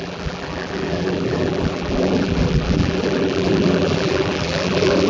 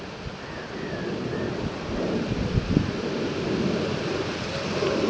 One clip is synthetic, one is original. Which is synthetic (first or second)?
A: first